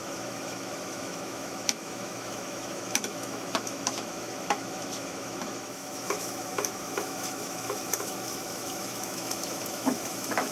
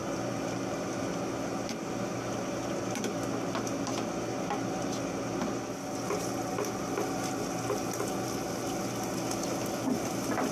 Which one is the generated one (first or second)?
first